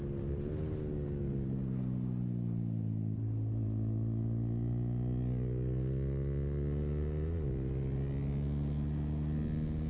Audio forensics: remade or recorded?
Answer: recorded